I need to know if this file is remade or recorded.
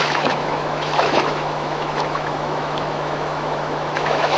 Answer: remade